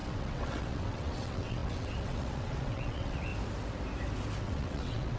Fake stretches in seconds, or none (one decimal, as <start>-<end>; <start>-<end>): 0.0-3.3; 4.4-5.2